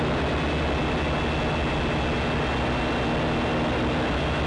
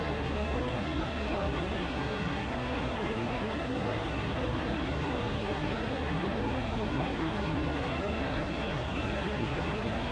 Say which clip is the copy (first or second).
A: second